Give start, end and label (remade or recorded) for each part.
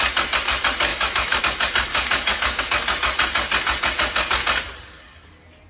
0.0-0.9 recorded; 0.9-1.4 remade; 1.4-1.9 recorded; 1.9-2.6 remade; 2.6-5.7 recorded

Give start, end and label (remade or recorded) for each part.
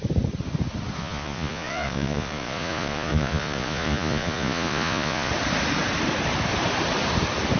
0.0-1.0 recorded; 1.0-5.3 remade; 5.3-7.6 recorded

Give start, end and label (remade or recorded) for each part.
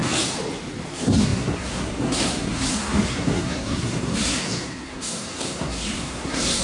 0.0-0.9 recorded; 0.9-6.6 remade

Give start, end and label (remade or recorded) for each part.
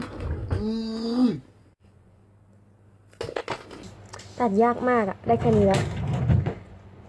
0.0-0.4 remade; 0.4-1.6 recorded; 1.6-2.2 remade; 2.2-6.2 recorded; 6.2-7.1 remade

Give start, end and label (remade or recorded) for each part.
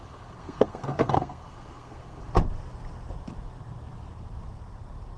0.0-2.3 remade; 2.3-5.2 recorded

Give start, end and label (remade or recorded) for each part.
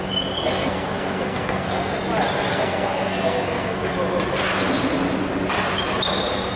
0.0-0.6 recorded; 0.6-1.9 remade; 1.9-2.5 recorded; 2.5-3.8 remade; 3.8-6.6 recorded